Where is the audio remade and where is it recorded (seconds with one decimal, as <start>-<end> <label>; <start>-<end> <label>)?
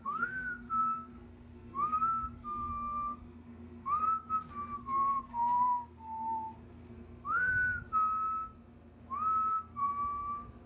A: 0.0-4.0 remade; 4.0-4.8 recorded; 4.8-7.5 remade; 7.5-9.5 recorded; 9.5-9.9 remade; 9.9-10.7 recorded